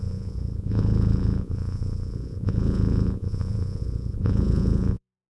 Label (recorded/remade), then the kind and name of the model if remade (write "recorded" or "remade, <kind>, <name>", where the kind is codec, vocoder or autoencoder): remade, vocoder, Vocos